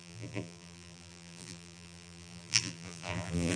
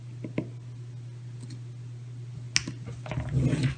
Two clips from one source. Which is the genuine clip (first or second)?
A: second